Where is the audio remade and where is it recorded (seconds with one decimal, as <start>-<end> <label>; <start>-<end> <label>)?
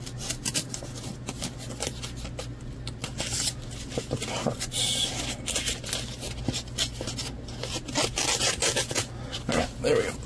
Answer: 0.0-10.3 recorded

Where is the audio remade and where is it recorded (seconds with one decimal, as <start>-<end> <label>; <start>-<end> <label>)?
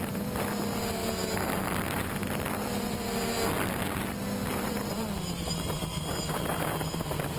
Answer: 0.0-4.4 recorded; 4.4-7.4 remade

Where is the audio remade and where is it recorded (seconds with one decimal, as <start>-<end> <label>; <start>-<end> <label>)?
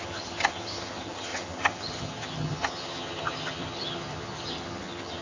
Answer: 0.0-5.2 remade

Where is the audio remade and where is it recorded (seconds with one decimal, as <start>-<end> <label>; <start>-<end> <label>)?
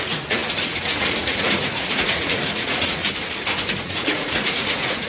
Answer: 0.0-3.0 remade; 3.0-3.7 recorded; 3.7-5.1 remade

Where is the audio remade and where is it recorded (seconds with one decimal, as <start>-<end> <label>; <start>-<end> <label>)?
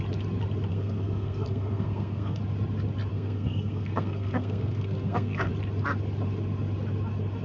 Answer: 0.0-0.7 recorded; 0.7-2.4 remade; 2.4-3.1 recorded; 3.1-5.5 remade; 5.5-7.4 recorded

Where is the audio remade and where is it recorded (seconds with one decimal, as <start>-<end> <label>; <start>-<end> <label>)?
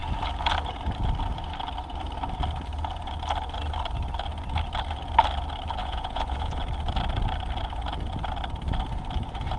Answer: 0.0-5.8 recorded; 5.8-6.6 remade; 6.6-9.6 recorded